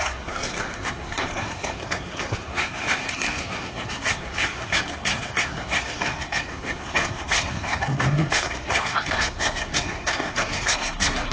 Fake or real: fake